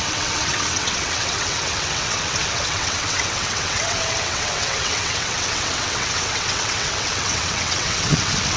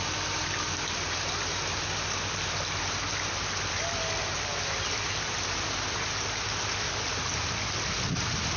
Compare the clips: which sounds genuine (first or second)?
second